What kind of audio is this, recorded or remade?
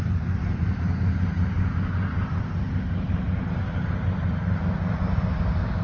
recorded